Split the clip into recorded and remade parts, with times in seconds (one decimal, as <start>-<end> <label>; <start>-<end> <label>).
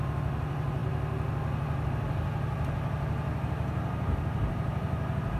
0.0-5.4 recorded